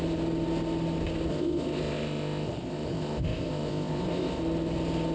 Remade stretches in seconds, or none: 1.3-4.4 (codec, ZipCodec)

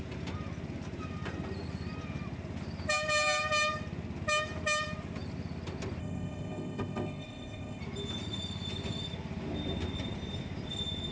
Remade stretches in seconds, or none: 6.0-7.8 (codec, ZipCodec)

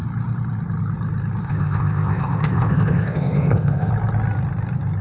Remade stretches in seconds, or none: 1.4-3.9 (codec, ZipCodec)

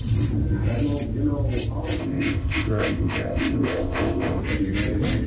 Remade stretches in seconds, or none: 2.0-4.4 (codec, ZipCodec)